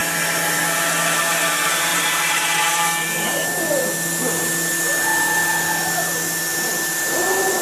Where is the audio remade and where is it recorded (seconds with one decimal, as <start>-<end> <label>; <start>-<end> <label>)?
0.0-1.9 recorded; 1.9-3.5 remade; 3.5-7.6 recorded